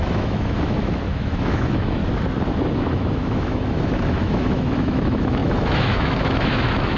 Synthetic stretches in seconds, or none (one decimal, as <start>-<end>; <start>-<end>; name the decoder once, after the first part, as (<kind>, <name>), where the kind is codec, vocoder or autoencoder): 0.0-2.0 (autoencoder, DAC-VAE); 2.7-7.0